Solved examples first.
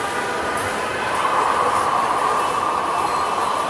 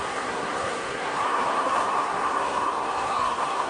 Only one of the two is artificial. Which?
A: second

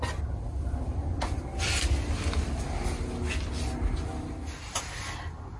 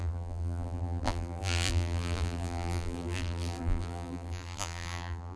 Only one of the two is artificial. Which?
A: second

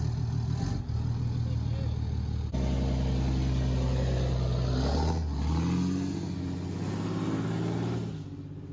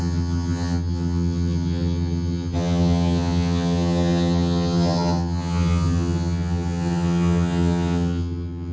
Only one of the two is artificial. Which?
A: second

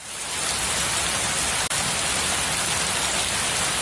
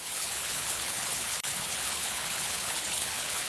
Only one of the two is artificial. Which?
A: second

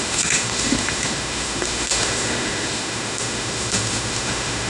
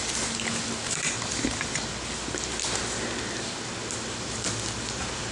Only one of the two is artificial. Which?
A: first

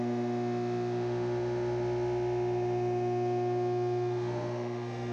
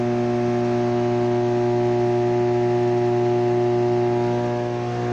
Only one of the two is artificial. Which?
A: first